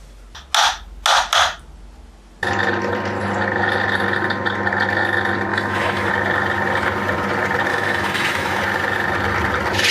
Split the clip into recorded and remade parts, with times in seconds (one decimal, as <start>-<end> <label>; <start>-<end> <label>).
0.0-5.5 recorded; 5.5-6.1 remade; 6.1-7.7 recorded; 7.7-8.6 remade; 8.6-9.9 recorded